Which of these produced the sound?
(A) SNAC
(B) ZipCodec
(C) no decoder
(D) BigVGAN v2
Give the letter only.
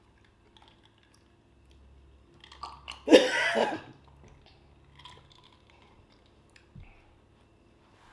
C